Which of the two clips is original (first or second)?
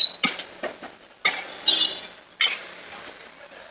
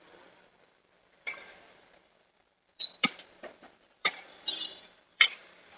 first